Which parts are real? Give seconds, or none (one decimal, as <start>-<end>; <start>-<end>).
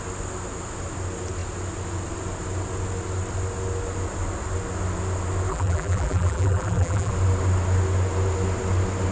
0.0-5.5; 7.1-9.1